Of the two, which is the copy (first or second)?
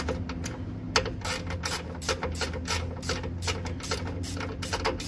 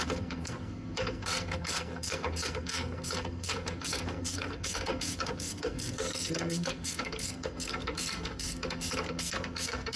second